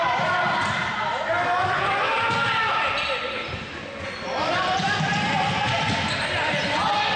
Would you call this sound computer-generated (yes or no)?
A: no